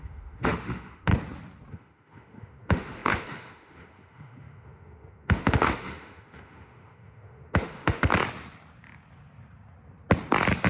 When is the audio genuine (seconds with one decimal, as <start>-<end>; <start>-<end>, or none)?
1.1-1.7; 8.1-10.7